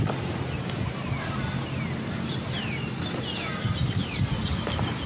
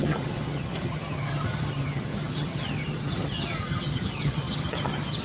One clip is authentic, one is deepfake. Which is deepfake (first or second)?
second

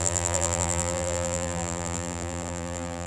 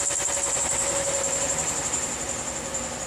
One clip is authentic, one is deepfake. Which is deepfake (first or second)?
first